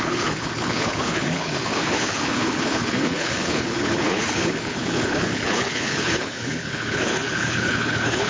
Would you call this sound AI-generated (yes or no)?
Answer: yes